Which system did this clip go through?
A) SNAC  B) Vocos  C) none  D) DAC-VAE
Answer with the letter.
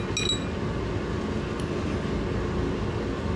C